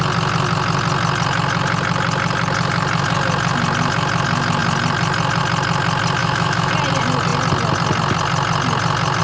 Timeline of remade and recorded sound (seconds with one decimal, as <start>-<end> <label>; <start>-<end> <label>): 0.0-6.2 recorded; 6.2-6.7 remade; 6.7-9.2 recorded